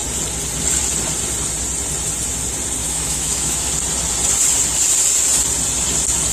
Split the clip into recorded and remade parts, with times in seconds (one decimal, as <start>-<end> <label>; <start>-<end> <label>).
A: 0.0-2.8 recorded; 2.8-3.7 remade; 3.7-6.3 recorded